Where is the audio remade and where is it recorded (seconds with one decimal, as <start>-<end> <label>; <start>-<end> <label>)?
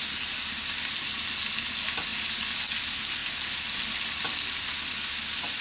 0.0-5.6 recorded